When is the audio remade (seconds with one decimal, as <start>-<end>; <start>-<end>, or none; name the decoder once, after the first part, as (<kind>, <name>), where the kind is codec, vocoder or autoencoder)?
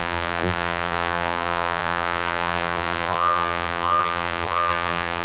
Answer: 0.0-5.2 (vocoder, BigVGAN v2)